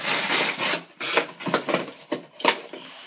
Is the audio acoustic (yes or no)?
yes